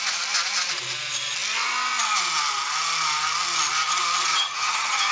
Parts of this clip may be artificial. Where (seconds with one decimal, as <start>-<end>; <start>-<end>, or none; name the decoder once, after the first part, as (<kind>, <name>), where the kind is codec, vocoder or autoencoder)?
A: 4.3-5.1 (vocoder, HiFi-GAN)